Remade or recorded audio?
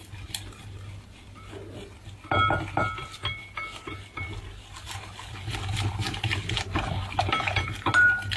recorded